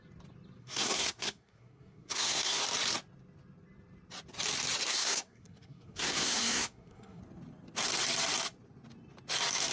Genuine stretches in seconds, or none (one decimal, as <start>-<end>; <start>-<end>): 0.0-0.6; 2.6-4.9; 7.2-9.7